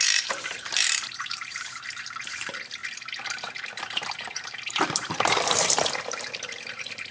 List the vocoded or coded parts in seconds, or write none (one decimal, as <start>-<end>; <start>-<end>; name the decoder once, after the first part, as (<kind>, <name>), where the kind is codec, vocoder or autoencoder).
0.0-2.8 (vocoder, BigVGAN v2); 3.4-7.1